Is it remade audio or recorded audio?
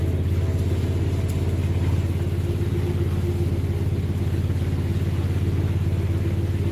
recorded